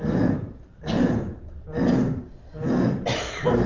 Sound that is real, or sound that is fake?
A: real